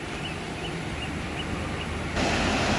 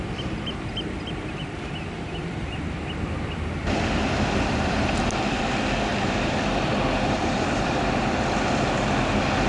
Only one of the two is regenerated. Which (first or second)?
second